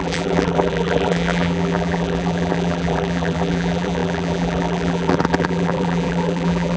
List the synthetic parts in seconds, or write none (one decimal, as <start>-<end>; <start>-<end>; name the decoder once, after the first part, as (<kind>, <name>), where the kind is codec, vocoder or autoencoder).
0.0-6.8 (vocoder, BigVGAN v2)